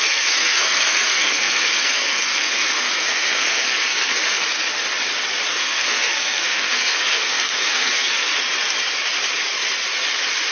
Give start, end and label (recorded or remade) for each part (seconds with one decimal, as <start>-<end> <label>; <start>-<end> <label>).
0.0-4.4 remade; 4.4-5.5 recorded; 5.5-8.3 remade; 8.3-10.5 recorded